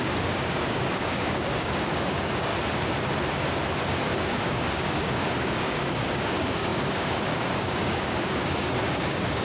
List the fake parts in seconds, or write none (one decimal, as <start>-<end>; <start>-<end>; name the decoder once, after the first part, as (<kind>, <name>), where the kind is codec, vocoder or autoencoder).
0.0-2.5 (codec, DAC); 4.2-9.4